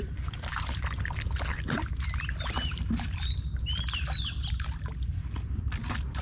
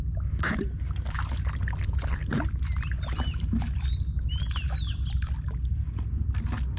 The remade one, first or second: first